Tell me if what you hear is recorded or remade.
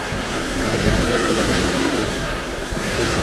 remade